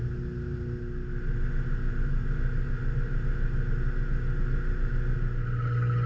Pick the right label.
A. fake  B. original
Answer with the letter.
B